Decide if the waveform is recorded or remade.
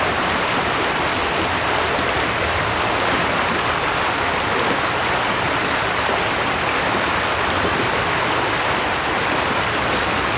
recorded